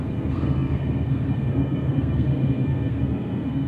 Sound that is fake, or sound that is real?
fake